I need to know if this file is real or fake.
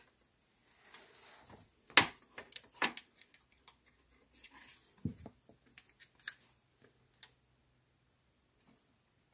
real